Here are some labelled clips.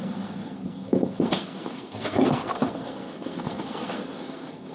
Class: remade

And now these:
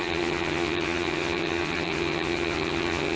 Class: remade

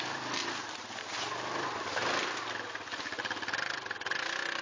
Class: recorded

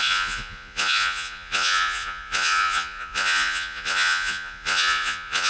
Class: remade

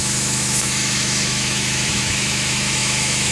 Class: remade